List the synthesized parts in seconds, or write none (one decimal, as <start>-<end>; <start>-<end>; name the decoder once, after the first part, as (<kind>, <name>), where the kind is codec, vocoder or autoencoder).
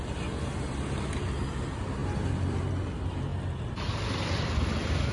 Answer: none